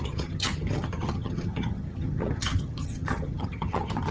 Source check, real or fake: fake